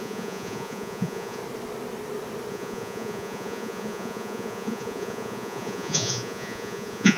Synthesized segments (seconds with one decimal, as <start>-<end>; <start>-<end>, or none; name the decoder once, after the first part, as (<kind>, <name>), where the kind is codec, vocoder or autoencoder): 0.0-1.4 (vocoder, Vocos); 2.5-7.2